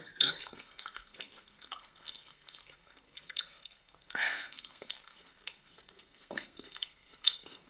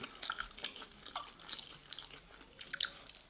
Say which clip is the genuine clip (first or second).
second